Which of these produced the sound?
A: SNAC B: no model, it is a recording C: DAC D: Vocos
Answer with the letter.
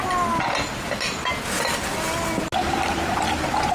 B